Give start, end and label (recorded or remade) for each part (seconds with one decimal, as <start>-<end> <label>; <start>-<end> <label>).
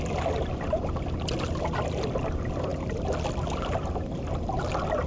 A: 0.0-5.1 recorded